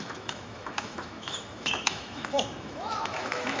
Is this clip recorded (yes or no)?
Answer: no